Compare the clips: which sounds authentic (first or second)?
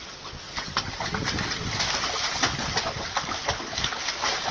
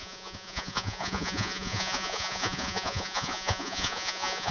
first